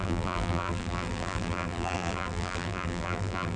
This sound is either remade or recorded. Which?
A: remade